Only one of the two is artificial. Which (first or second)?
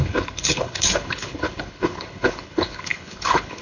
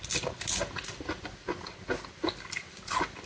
first